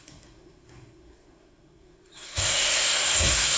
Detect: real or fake fake